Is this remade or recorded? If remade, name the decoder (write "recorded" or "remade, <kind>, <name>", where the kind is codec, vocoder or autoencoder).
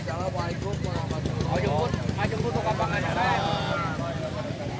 recorded